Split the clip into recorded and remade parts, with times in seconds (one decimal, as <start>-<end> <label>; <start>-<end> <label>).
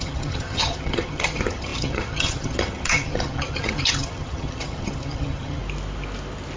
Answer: 0.0-5.6 remade; 5.6-6.6 recorded